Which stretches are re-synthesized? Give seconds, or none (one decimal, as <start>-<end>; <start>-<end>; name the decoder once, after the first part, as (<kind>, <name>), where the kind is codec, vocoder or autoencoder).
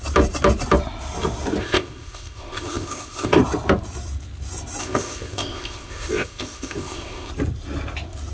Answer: 1.6-3.4 (codec, ZipCodec); 4.8-7.3